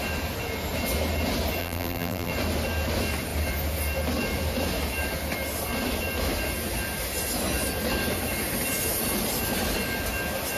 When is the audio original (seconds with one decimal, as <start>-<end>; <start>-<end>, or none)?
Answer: 0.0-1.6; 2.3-10.6